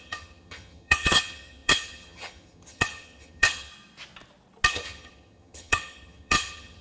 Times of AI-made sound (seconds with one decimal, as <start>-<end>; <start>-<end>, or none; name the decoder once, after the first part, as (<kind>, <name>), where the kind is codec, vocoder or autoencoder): 0.0-3.7 (vocoder, HiFi-GAN); 4.7-6.8